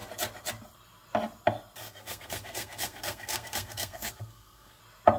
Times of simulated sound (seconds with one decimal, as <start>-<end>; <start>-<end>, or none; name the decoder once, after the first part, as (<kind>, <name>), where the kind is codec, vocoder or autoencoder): 1.8-4.8 (codec, SNAC)